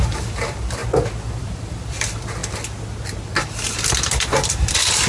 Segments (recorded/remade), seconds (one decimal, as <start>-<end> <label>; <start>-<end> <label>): 0.0-0.8 remade; 0.8-1.4 recorded; 1.4-2.4 remade; 2.4-3.7 recorded; 3.7-5.1 remade

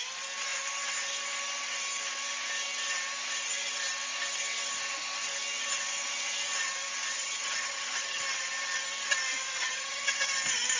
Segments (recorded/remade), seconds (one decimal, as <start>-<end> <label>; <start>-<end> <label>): 0.0-7.1 recorded; 7.1-8.2 remade; 8.2-9.6 recorded; 9.6-10.3 remade; 10.3-10.8 recorded

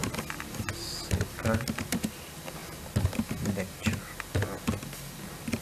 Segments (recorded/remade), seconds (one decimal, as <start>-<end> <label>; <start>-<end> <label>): 0.0-5.6 recorded

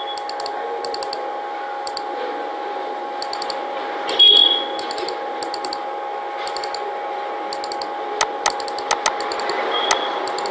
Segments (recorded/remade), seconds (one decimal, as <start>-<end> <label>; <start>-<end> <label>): 0.0-10.5 recorded

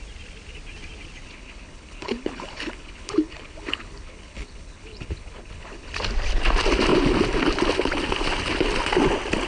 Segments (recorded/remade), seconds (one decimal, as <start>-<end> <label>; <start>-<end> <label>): 0.0-1.2 recorded; 1.2-5.9 remade; 5.9-9.5 recorded

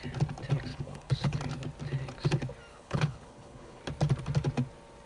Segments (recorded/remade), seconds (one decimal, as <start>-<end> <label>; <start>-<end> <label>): 0.0-0.7 recorded; 0.7-1.4 remade; 1.4-2.7 recorded; 2.7-3.8 remade; 3.8-5.1 recorded

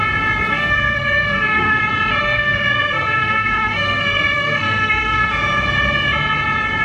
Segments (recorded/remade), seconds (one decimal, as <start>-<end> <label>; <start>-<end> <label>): 0.0-0.5 recorded; 0.5-1.8 remade; 1.8-2.2 recorded; 2.2-5.3 remade; 5.3-6.8 recorded